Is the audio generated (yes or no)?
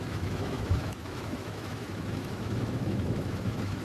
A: yes